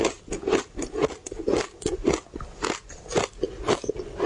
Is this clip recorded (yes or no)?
yes